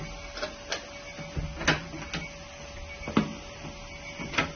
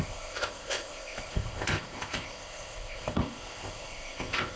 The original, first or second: first